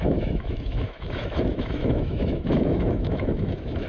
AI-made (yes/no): yes